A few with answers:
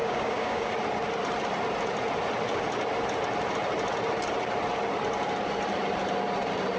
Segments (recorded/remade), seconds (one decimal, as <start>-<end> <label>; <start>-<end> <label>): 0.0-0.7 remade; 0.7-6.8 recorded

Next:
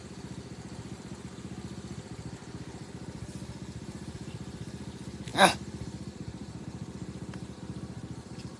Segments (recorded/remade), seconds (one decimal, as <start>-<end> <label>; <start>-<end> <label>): 0.0-2.6 recorded; 2.6-8.6 remade

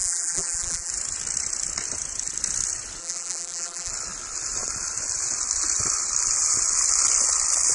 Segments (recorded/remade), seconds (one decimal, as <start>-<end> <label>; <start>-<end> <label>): 0.0-0.9 remade; 0.9-3.0 recorded; 3.0-3.9 remade; 3.9-7.7 recorded

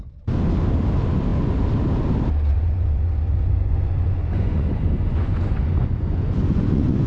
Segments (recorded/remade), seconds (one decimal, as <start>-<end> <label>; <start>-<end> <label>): 0.0-2.5 recorded; 2.5-7.1 remade

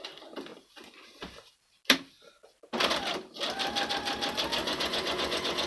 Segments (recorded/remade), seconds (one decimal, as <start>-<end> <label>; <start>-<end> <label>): 0.0-4.6 recorded; 4.6-5.7 remade